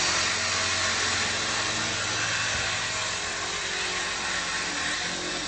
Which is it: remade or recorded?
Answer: recorded